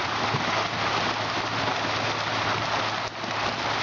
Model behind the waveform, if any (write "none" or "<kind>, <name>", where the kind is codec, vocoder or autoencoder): none